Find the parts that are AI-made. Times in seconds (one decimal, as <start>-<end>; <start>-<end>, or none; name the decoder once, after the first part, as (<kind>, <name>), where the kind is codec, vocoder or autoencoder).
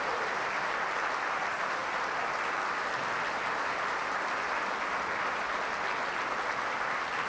none